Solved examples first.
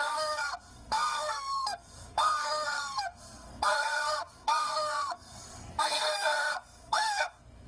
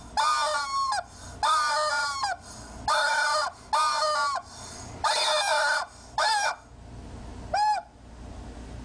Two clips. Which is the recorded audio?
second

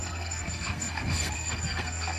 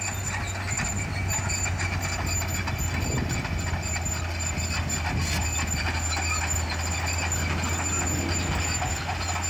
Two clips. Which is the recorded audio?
second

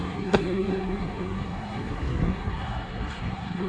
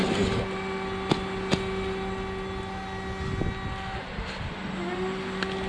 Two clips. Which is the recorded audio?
second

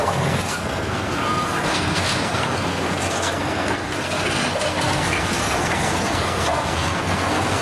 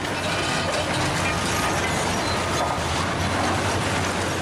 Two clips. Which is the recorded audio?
second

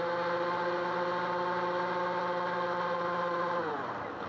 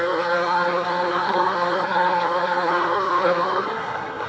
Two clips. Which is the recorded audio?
first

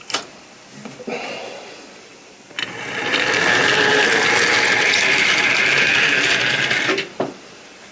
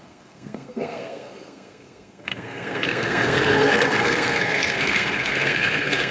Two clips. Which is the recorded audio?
first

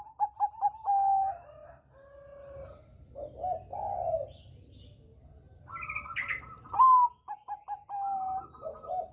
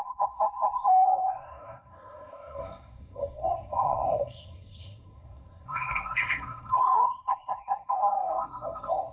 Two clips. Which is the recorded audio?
first